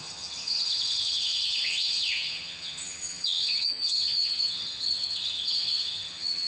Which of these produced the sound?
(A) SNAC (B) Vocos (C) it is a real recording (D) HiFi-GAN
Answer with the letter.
D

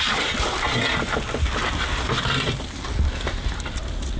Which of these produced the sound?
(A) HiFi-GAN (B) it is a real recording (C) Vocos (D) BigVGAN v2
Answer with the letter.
B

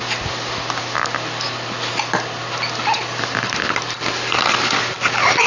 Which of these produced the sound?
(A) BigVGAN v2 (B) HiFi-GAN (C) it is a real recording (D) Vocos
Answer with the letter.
C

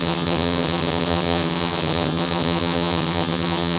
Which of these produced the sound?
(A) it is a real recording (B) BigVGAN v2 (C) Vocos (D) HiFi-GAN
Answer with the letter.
D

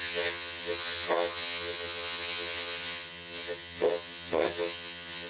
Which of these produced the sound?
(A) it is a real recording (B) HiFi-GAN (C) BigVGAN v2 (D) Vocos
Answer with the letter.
B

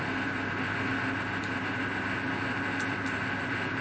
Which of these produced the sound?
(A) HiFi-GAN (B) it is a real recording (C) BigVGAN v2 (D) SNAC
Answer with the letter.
B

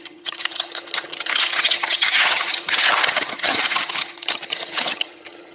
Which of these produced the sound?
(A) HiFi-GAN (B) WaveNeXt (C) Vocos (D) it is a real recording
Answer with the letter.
A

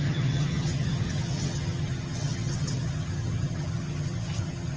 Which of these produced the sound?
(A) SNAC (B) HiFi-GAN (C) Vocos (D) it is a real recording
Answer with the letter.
B